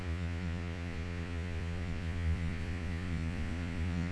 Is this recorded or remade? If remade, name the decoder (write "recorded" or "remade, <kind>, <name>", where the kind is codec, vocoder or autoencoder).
remade, vocoder, Vocos